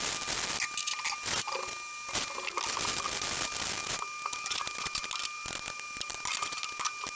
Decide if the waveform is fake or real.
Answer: real